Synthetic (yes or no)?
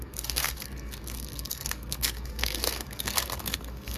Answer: yes